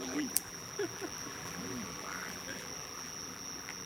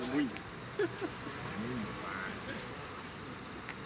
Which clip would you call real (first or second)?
second